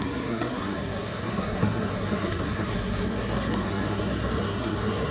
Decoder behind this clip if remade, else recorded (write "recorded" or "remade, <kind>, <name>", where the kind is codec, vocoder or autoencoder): remade, codec, SNAC